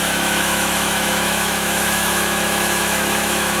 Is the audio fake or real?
fake